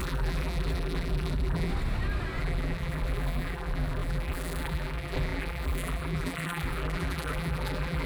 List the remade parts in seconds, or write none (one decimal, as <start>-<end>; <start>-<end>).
0.0-1.7; 2.4-8.1